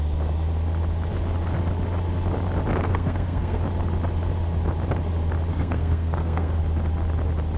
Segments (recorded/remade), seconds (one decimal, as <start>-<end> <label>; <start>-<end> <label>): 0.0-2.9 recorded; 2.9-3.6 remade; 3.6-5.5 recorded; 5.5-6.6 remade; 6.6-7.6 recorded